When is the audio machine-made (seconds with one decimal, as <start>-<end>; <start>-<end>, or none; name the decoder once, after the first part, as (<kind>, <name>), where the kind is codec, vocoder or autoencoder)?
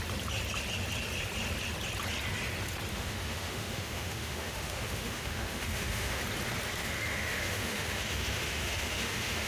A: 2.9-6.2 (autoencoder, DAC-VAE); 6.8-9.5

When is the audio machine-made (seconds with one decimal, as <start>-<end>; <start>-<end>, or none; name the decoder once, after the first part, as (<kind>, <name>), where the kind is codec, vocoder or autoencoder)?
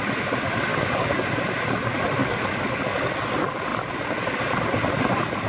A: 0.7-1.4 (codec, DAC); 2.2-3.1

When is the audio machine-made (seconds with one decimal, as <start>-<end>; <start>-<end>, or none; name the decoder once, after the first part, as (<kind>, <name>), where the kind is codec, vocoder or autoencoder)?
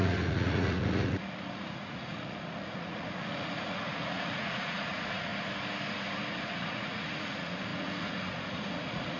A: 0.0-5.3 (vocoder, Vocos); 6.3-9.2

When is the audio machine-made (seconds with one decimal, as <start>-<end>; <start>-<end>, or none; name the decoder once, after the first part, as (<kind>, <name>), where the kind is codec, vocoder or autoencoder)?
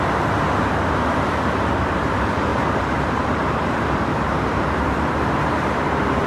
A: 0.0-6.3 (vocoder, BigVGAN v2)